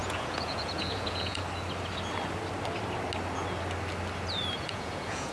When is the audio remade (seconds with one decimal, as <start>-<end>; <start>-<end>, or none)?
0.0-1.4; 4.6-5.3